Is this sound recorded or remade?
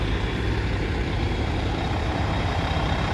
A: remade